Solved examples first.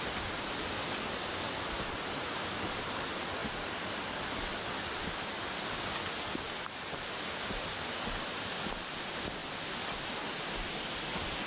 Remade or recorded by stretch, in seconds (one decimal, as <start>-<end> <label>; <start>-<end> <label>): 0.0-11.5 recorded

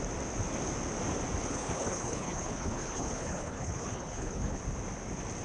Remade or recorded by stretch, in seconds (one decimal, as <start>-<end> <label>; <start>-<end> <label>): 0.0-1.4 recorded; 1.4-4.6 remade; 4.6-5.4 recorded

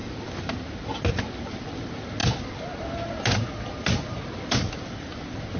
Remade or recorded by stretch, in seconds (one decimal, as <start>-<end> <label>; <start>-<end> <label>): 0.0-5.6 recorded

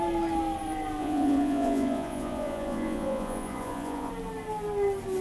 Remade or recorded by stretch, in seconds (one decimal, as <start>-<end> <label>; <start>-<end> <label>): 0.0-1.0 recorded; 1.0-4.1 remade; 4.1-5.2 recorded

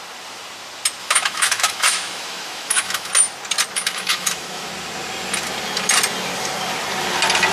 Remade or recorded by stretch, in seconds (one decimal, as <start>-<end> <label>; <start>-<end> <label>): 0.0-1.0 recorded; 1.0-3.1 remade; 3.1-3.8 recorded; 3.8-4.7 remade; 4.7-7.5 recorded